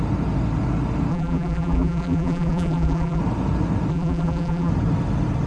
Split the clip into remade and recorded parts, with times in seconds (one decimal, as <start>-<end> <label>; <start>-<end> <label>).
0.0-1.1 recorded; 1.1-3.2 remade; 3.2-3.9 recorded; 3.9-4.7 remade; 4.7-5.5 recorded